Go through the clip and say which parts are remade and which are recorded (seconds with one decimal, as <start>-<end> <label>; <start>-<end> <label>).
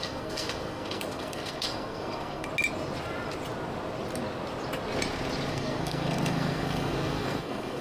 0.0-2.5 remade; 2.5-5.5 recorded; 5.5-7.8 remade